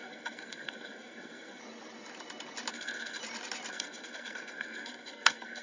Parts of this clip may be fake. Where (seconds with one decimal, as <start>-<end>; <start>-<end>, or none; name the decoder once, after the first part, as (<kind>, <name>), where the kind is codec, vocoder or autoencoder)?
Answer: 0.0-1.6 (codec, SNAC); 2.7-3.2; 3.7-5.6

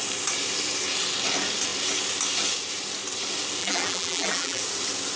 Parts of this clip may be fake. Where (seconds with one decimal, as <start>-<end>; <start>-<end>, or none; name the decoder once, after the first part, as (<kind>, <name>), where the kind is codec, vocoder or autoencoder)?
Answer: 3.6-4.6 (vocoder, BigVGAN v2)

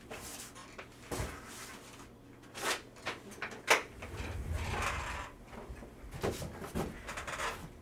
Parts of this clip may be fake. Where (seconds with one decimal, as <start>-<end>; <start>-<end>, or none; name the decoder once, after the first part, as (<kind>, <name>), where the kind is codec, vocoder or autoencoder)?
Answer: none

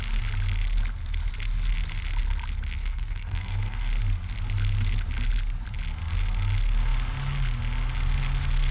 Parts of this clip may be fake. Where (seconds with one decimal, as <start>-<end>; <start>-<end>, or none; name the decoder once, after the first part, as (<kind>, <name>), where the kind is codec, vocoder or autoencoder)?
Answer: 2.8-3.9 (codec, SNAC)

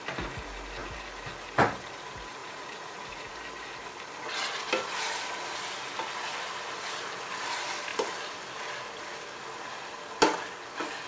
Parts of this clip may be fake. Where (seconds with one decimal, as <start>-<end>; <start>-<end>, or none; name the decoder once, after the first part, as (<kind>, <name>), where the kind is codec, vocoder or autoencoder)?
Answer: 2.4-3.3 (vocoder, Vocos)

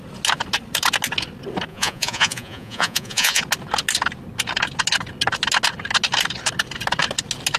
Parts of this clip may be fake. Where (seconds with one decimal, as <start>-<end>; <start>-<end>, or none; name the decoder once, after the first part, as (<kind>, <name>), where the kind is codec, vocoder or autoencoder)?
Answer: 1.7-3.4 (vocoder, Vocos)

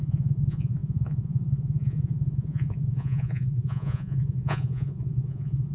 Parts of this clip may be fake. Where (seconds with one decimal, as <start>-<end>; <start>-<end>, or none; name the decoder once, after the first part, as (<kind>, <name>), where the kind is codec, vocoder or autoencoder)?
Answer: 0.0-5.7 (vocoder, Vocos)